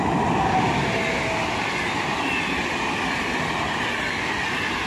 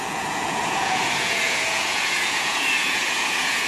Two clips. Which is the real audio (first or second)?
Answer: first